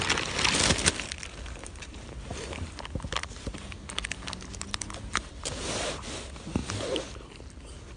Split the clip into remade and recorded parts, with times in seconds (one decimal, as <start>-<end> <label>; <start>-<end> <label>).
0.0-8.0 recorded